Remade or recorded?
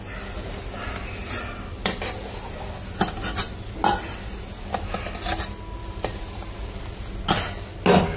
recorded